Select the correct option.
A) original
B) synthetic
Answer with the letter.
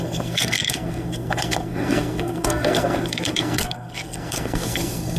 B